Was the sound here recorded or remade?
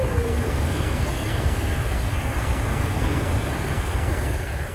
remade